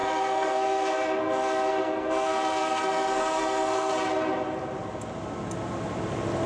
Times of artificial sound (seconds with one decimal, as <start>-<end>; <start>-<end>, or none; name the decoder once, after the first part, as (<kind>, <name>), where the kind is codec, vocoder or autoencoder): 0.0-3.9 (codec, SNAC)